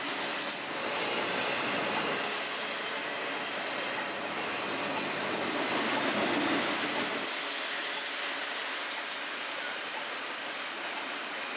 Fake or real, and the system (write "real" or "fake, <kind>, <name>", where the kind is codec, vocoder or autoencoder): real